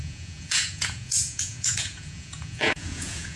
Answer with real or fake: fake